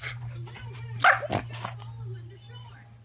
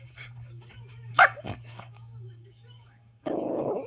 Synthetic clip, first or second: second